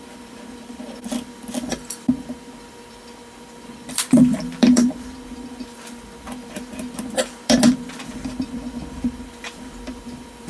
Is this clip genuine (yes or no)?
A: no